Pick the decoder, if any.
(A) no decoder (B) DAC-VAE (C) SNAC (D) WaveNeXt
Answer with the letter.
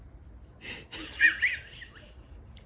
A